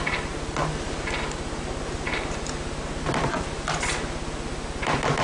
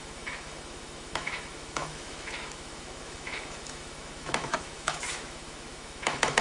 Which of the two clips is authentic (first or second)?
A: first